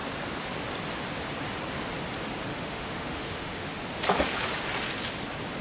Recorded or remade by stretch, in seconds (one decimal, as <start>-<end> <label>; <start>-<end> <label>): 0.0-2.5 recorded; 2.5-3.8 remade; 3.8-5.6 recorded